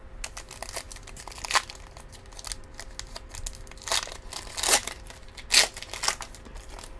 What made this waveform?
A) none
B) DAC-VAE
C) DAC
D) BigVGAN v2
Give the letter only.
A